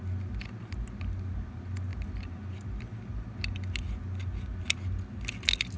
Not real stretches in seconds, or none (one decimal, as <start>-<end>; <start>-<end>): none